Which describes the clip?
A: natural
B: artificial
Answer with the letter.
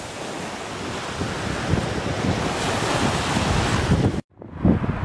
A